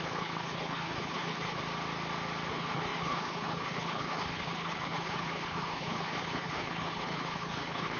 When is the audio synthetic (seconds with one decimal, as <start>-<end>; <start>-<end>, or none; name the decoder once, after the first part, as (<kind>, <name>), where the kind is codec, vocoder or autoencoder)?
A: 0.0-1.6 (codec, HILCodec); 2.5-8.0